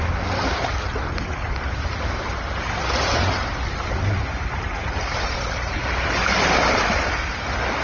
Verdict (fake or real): real